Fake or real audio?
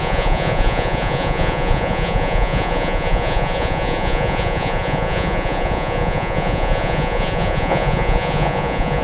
fake